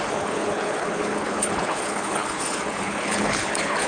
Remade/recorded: remade